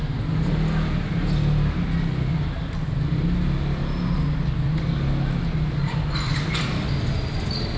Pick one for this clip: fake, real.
real